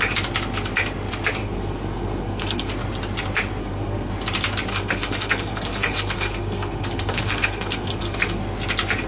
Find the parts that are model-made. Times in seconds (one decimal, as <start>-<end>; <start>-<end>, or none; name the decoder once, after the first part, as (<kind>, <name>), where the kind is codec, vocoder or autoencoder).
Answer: 1.4-2.7 (codec, SNAC); 3.6-4.1; 4.7-8.4